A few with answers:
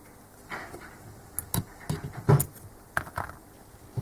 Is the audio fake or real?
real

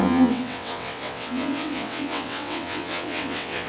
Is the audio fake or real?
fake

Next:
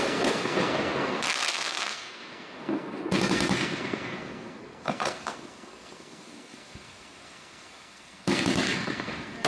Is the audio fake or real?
fake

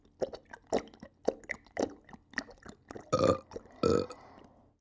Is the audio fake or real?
real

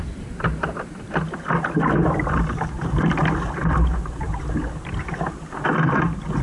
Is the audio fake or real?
real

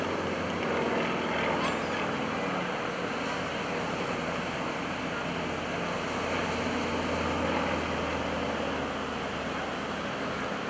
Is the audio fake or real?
real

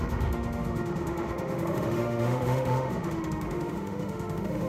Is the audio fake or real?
fake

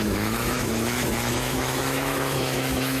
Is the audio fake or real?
fake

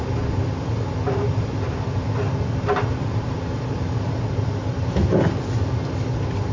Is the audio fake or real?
real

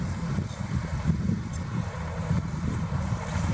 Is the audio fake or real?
fake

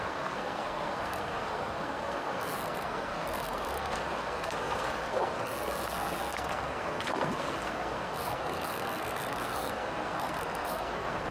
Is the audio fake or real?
fake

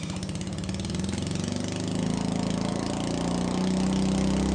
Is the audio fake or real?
real